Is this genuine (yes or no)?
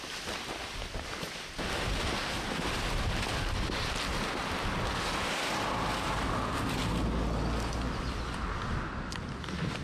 yes